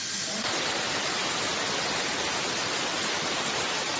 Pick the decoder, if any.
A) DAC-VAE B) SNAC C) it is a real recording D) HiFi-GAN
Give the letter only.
C